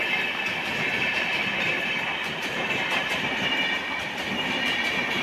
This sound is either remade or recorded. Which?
remade